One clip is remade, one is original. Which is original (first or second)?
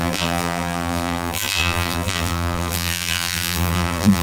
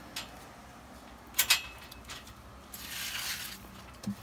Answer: second